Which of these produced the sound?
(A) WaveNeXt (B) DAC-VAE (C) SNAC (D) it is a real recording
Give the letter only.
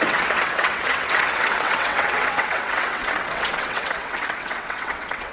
A